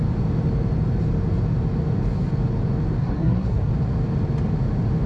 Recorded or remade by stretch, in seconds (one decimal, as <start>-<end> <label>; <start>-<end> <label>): 0.0-3.0 recorded; 3.0-3.7 remade; 3.7-5.1 recorded